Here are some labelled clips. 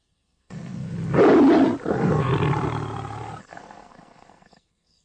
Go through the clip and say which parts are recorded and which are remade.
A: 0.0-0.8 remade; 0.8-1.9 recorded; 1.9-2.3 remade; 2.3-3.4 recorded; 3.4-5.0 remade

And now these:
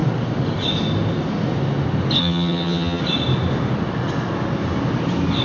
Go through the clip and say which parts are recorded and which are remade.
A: 0.0-2.2 recorded; 2.2-3.0 remade; 3.0-5.4 recorded

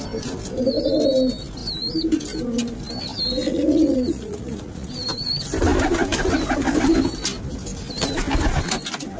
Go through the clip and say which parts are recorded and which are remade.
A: 0.0-3.5 recorded; 3.5-4.9 remade; 4.9-9.2 recorded

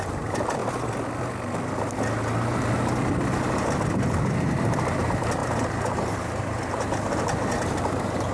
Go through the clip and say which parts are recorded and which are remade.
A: 0.0-0.6 remade; 0.6-3.9 recorded; 3.9-8.3 remade